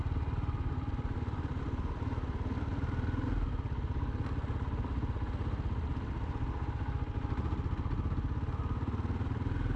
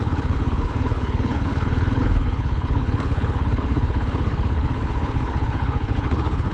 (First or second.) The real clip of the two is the first